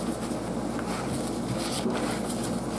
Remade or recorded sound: recorded